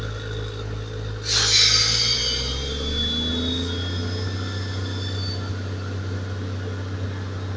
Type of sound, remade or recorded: recorded